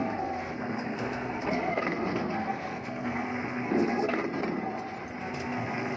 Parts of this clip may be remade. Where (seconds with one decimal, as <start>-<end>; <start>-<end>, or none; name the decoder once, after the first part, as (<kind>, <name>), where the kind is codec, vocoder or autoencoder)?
0.0-4.2 (codec, SNAC); 5.2-6.0